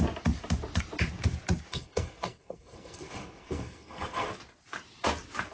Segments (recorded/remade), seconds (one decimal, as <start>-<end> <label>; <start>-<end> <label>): 0.0-1.7 recorded; 1.7-4.3 remade; 4.3-5.5 recorded